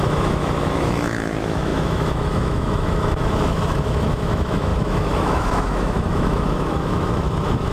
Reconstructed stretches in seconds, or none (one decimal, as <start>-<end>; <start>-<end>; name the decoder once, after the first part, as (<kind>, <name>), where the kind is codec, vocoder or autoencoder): 0.0-7.7 (autoencoder, DAC-VAE)